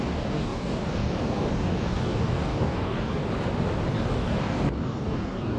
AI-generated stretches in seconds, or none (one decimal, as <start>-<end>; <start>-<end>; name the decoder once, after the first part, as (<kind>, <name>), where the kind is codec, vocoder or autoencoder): 0.0-3.2 (codec, DAC); 4.1-5.6